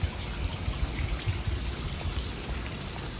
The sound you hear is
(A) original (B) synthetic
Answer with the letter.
A